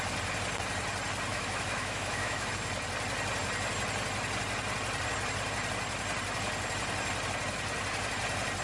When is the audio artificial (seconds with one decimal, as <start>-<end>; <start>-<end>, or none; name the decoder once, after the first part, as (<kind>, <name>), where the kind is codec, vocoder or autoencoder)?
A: 1.3-2.5 (autoencoder, DAC-VAE)